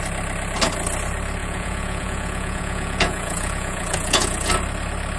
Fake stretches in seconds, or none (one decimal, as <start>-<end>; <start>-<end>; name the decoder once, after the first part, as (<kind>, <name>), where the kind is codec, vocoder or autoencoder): 1.4-4.5 (vocoder, Vocos)